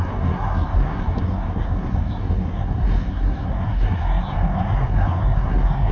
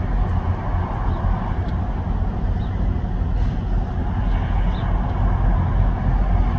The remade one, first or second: first